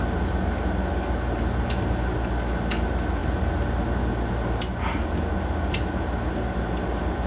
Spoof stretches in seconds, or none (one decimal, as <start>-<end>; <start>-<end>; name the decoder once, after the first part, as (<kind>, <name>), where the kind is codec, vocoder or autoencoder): none

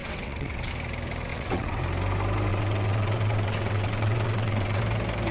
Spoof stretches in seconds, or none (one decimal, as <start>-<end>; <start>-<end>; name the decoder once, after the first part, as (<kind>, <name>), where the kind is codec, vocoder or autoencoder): 0.0-0.7 (vocoder, WaveNeXt); 1.3-1.8; 2.5-4.8

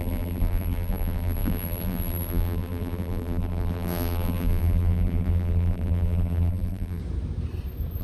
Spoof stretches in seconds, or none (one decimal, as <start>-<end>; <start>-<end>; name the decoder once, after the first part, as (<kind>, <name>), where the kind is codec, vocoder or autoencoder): 0.0-7.0 (vocoder, BigVGAN v2)

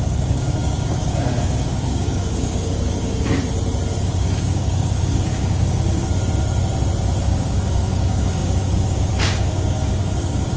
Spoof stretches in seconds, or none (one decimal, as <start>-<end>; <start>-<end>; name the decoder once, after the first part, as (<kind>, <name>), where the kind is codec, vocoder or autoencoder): 0.0-3.3 (codec, DAC); 3.9-6.1; 7.2-10.6